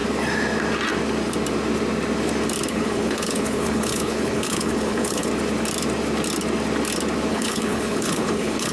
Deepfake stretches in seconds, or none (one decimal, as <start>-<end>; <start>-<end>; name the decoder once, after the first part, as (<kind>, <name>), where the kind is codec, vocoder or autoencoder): 2.7-5.3 (codec, HILCodec); 7.3-8.7